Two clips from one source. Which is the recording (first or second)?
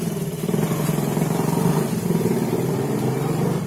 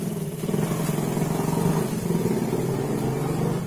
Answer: second